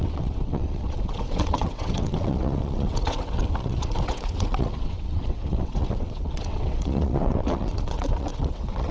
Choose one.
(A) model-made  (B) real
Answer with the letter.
A